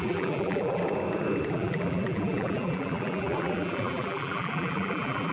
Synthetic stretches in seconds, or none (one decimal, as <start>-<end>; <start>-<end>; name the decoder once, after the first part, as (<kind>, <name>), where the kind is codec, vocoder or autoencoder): 0.0-0.8 (vocoder, BigVGAN v2); 1.5-5.3